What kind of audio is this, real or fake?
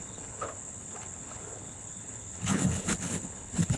fake